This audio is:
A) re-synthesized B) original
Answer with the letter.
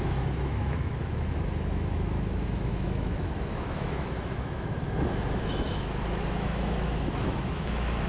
A